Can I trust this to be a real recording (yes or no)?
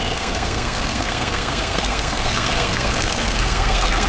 no